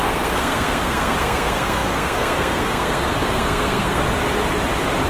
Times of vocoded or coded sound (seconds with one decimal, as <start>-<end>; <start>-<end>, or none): 0.0-4.0